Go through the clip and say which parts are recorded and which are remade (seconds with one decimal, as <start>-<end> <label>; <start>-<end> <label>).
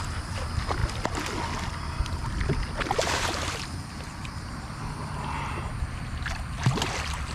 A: 0.0-7.3 recorded